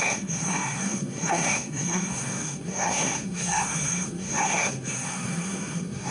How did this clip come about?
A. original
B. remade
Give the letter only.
B